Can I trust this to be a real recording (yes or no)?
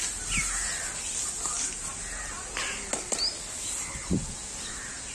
yes